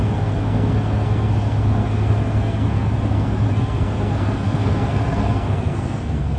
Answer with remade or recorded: remade